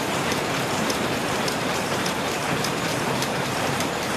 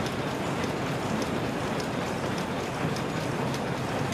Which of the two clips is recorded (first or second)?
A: second